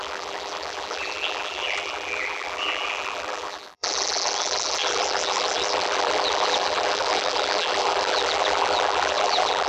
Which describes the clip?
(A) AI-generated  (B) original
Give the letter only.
A